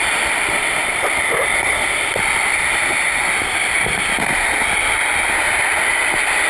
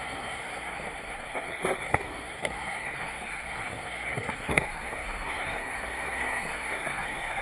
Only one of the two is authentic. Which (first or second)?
first